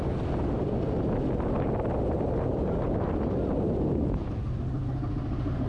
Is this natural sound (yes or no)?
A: yes